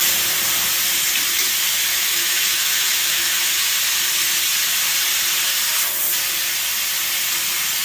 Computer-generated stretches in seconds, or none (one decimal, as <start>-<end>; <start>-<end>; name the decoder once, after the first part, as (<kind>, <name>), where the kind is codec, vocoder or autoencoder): 1.9-3.7 (autoencoder, DAC-VAE)